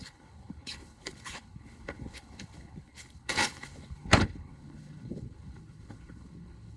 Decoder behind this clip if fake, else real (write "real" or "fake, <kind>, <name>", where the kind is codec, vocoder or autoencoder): fake, codec, HILCodec